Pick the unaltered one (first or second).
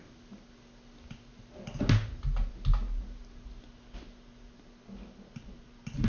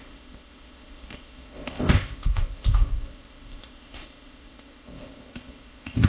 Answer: first